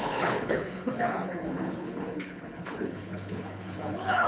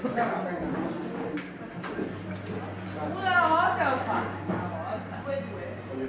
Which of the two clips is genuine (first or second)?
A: second